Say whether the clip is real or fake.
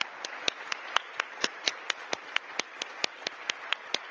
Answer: real